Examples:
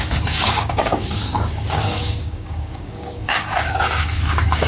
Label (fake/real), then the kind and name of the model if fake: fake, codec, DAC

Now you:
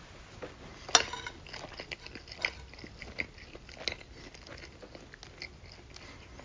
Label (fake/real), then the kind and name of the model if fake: real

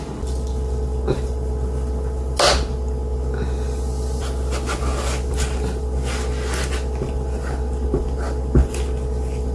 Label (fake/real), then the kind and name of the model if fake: real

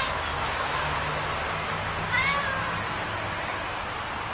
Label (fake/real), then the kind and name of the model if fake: real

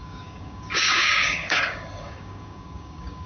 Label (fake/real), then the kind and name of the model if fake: fake, codec, DAC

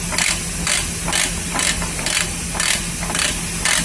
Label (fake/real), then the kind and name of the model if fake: real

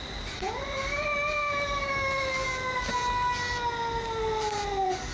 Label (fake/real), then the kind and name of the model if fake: real